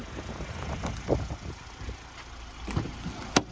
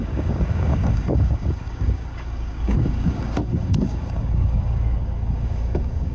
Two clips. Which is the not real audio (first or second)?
second